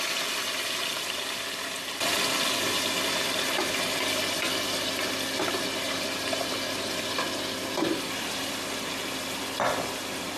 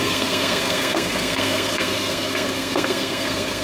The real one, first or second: first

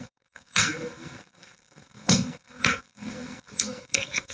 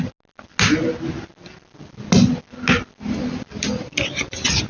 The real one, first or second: second